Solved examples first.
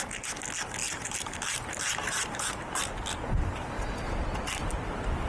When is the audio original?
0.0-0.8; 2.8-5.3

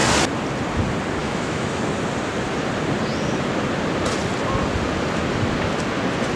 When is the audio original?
0.0-1.2; 1.8-6.4

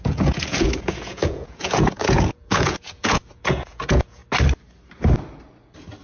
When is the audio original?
4.2-6.0

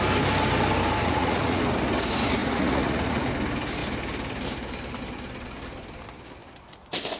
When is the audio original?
0.0-1.0; 1.6-2.4; 3.3-7.2

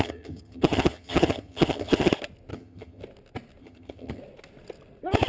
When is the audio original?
2.1-2.5; 3.0-3.6; 4.2-5.3